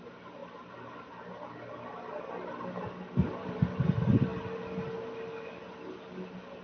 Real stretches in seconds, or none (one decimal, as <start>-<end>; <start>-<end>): 0.0-6.6